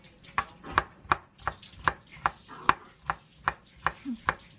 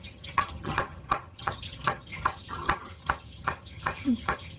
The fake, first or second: second